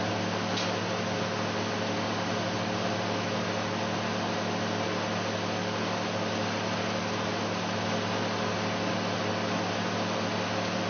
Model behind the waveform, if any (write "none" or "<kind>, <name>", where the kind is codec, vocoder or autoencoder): none